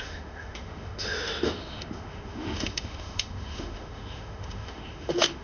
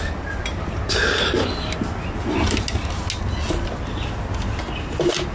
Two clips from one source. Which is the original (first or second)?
second